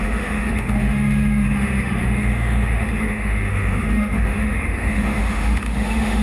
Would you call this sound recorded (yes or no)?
no